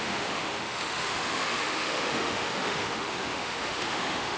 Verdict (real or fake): fake